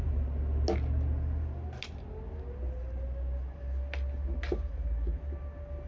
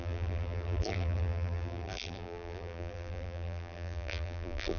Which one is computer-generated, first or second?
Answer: second